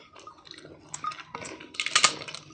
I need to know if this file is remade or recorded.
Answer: recorded